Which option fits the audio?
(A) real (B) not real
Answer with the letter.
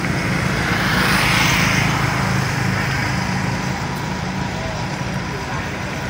A